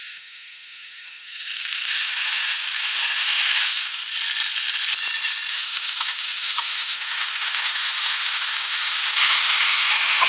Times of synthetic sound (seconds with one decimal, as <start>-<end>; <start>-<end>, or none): 0.0-4.0; 5.5-10.3